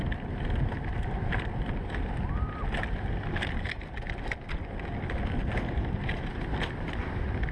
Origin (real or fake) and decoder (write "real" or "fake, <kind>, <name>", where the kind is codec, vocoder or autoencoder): real